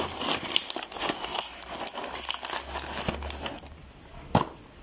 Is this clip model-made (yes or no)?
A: no